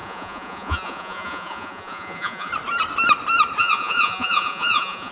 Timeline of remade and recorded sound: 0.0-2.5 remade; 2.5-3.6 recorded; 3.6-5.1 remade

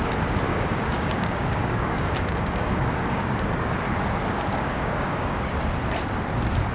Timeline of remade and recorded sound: 0.0-0.5 recorded; 0.5-3.7 remade; 3.7-4.2 recorded; 4.2-5.5 remade; 5.5-6.7 recorded